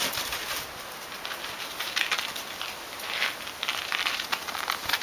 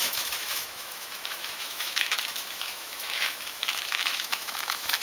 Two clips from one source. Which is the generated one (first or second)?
second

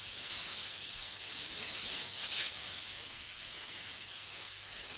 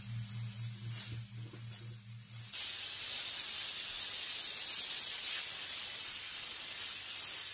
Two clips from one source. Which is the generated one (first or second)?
first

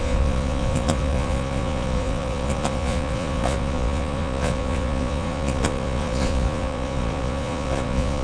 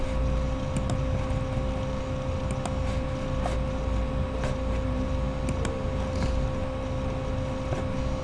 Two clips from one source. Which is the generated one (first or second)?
first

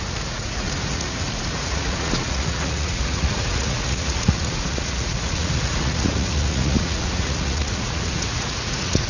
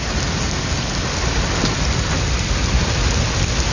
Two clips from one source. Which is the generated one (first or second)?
first